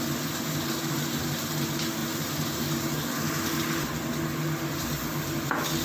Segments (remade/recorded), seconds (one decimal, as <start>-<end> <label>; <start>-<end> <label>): 0.0-2.0 recorded; 2.0-2.6 remade; 2.6-5.8 recorded